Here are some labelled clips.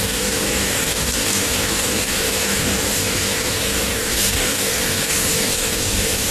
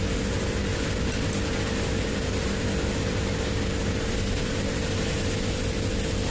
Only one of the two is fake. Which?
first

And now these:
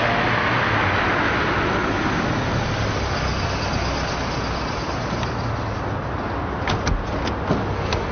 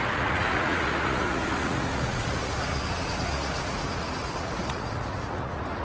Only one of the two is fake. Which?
second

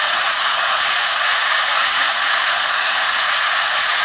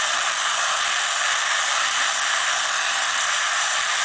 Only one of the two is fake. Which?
first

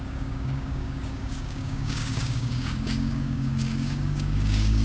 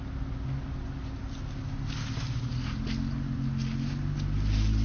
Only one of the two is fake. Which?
first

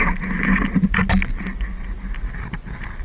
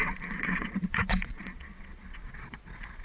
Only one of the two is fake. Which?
second